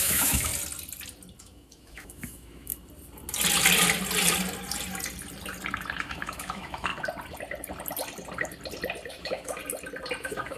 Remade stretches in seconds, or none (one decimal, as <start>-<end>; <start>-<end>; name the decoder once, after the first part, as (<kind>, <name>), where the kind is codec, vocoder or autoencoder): 0.0-0.5 (autoencoder, DAC-VAE); 1.4-2.7; 6.0-6.9; 9.1-9.6; 10.2-10.6